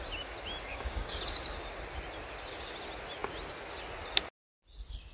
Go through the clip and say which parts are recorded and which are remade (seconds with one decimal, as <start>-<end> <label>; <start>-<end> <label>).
0.0-0.7 recorded; 0.7-1.2 remade; 1.2-5.1 recorded